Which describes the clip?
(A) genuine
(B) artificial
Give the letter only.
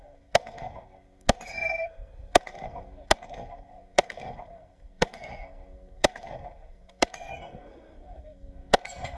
B